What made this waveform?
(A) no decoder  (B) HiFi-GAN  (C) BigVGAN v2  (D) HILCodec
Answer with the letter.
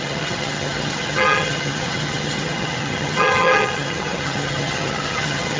B